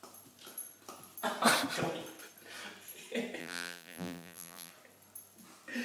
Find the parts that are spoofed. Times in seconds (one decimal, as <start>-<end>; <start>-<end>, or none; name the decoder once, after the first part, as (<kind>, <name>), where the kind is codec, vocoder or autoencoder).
3.4-4.7 (vocoder, BigVGAN v2)